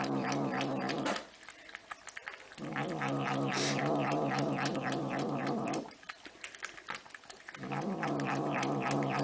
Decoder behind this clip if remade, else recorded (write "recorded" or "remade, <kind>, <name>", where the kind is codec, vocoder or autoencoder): recorded